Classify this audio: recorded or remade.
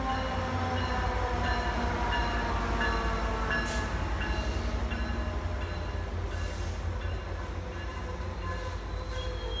recorded